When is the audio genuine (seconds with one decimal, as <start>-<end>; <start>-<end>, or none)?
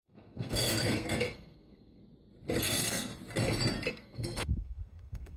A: 2.0-2.6; 3.1-3.9